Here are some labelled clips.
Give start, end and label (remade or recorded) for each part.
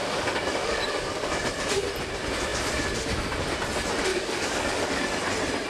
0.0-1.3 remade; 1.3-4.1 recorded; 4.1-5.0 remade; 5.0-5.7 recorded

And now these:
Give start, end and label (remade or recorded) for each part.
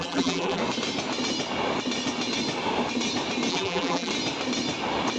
0.0-0.6 remade; 0.6-3.5 recorded; 3.5-4.1 remade; 4.1-5.2 recorded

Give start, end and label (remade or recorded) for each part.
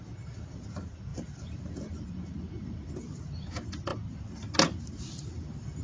0.0-1.1 recorded; 1.1-2.9 remade; 2.9-5.8 recorded